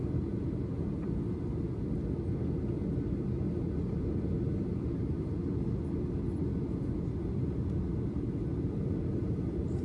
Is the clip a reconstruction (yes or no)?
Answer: no